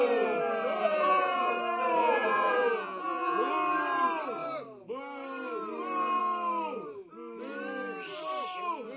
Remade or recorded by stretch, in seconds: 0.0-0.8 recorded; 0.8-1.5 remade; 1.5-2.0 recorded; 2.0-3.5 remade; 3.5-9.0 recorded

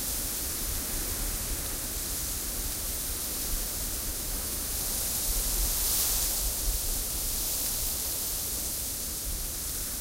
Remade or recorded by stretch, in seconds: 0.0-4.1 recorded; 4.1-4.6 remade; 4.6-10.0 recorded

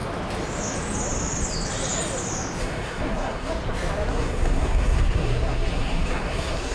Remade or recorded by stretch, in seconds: 0.0-2.6 recorded; 2.6-3.5 remade; 3.5-4.1 recorded; 4.1-6.7 remade

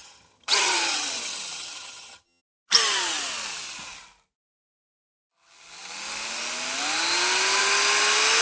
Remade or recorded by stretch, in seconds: 0.0-2.4 remade; 2.4-8.4 recorded

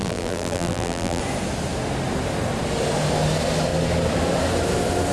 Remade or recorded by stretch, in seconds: 0.0-1.2 remade; 1.2-5.1 recorded